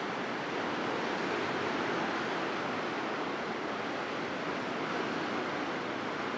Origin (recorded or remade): recorded